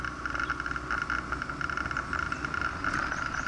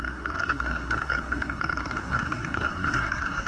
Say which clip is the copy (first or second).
second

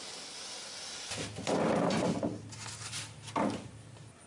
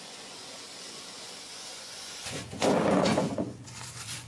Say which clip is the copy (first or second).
second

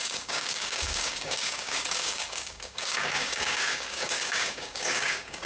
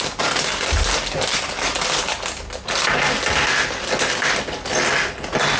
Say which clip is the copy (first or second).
first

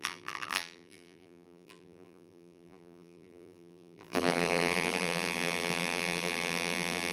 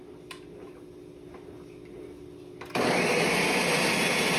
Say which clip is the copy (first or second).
first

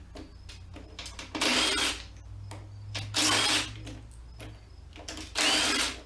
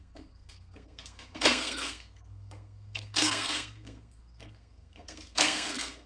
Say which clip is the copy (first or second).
second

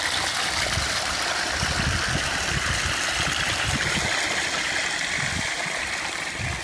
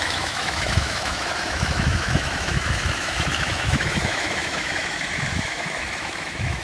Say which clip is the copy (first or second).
second